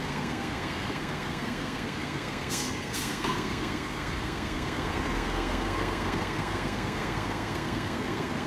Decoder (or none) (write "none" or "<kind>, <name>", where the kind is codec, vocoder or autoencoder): codec, SNAC